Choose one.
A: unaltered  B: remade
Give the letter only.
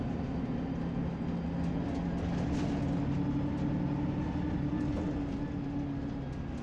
A